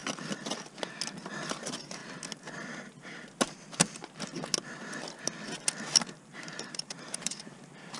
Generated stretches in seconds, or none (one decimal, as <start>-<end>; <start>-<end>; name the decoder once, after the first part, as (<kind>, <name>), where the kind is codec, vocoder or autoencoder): 1.3-2.0 (vocoder, BigVGAN v2); 5.8-8.0